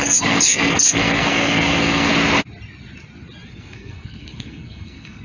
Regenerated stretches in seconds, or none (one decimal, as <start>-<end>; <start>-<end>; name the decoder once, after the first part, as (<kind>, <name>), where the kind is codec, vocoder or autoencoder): 0.0-2.1 (codec, SNAC); 3.5-5.2